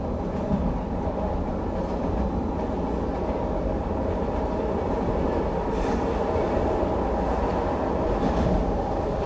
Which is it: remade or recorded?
recorded